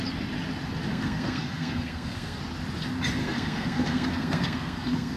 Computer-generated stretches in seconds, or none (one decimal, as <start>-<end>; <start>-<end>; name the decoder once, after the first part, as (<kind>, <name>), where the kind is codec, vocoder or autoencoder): 0.9-2.4 (codec, SNAC); 3.2-5.2